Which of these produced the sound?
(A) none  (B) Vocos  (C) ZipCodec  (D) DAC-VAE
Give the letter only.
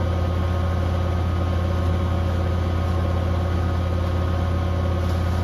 A